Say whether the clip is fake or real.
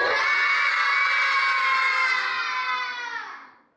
real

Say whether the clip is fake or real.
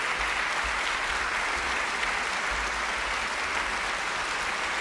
real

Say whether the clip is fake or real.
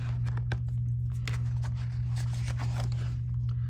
real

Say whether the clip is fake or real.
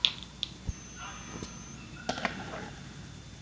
real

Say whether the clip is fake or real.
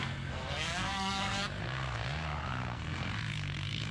fake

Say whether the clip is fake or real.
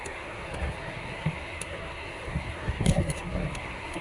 fake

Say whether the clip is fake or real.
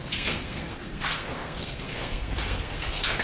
fake